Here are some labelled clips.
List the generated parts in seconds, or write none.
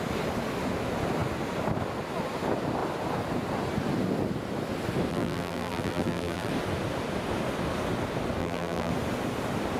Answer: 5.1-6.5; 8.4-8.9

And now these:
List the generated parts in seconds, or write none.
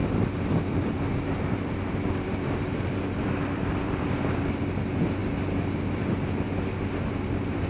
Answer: 0.0-4.6; 5.2-6.1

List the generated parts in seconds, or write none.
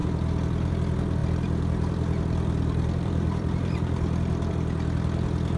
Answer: 1.2-4.5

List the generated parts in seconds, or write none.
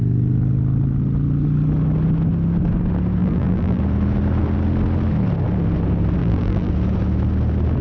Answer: 3.2-3.8; 6.2-6.7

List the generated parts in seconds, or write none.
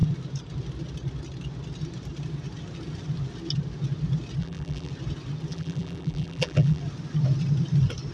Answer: 4.4-4.9; 5.5-6.8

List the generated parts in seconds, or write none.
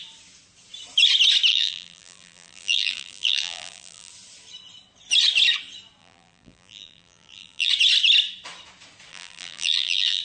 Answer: 1.5-4.1; 6.0-7.7; 9.1-10.2